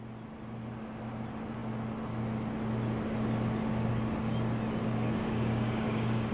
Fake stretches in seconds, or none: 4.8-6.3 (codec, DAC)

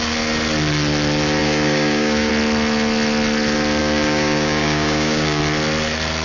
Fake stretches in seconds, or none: 1.4-2.3 (codec, DAC); 3.8-5.4

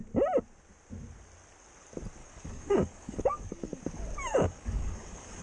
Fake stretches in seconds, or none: 2.2-3.8 (codec, DAC); 4.3-5.4

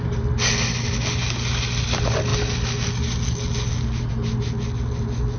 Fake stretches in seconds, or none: none

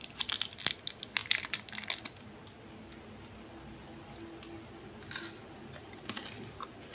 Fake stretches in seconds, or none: none

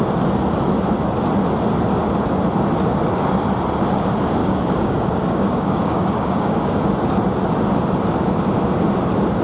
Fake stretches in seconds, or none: 4.4-6.8 (codec, DAC)